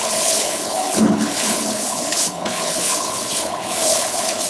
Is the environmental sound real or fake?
fake